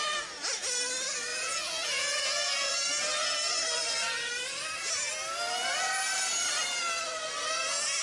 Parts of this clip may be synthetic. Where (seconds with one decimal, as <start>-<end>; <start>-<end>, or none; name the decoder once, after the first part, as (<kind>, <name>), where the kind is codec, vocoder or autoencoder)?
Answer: 1.3-2.7 (vocoder, Vocos)

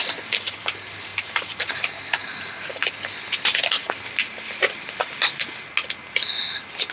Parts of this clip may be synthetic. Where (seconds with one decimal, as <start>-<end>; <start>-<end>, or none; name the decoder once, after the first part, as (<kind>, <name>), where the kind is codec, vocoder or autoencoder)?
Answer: 1.1-2.9 (vocoder, BigVGAN v2)

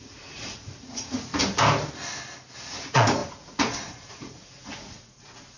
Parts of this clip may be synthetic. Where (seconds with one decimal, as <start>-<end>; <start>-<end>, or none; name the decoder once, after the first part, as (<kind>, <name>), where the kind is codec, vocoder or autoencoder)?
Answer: 0.0-1.3 (vocoder, Vocos); 2.7-5.6

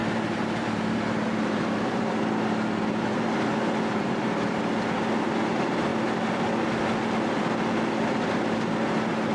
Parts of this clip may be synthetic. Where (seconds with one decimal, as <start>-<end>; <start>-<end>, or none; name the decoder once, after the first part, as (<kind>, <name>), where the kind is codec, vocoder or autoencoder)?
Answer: 0.0-2.2 (vocoder, BigVGAN v2); 3.1-4.7

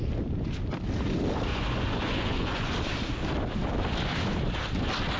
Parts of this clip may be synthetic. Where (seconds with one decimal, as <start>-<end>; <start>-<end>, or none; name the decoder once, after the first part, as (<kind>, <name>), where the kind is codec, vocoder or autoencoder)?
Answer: 1.5-2.7 (vocoder, Vocos)